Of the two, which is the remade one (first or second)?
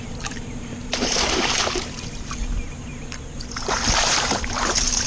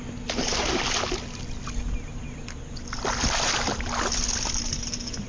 first